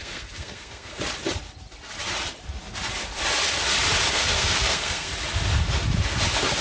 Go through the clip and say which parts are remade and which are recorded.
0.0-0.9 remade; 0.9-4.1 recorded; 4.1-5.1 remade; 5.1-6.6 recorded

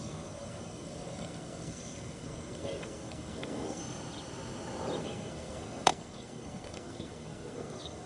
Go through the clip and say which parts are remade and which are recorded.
0.0-3.8 remade; 3.8-5.0 recorded; 5.0-8.1 remade